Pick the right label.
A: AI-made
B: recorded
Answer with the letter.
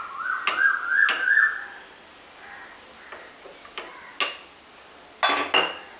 B